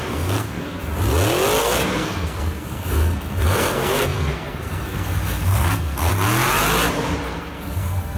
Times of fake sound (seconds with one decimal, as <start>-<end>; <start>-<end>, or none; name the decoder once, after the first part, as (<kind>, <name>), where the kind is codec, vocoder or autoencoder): 0.0-0.9 (codec, SNAC); 1.6-6.1; 7.2-8.2